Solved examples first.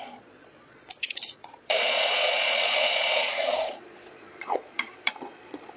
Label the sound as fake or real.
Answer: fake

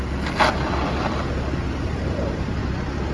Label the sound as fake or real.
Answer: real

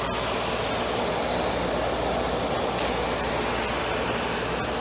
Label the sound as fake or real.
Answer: real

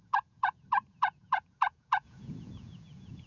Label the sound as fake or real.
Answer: fake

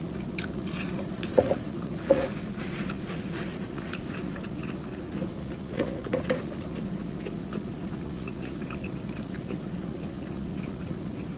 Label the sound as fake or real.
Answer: fake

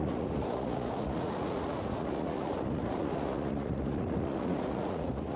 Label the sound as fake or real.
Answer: fake